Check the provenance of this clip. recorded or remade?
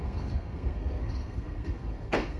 remade